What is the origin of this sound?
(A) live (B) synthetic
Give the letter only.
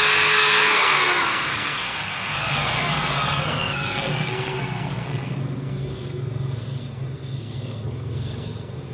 B